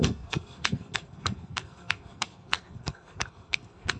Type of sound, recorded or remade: remade